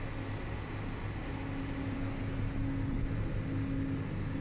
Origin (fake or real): real